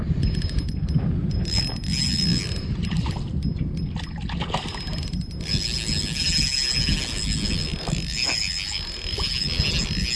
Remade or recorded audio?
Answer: recorded